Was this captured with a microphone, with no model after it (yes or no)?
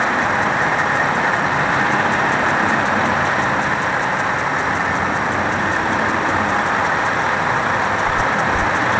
no